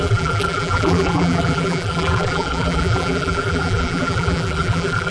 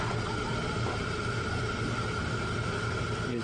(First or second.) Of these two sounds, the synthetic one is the first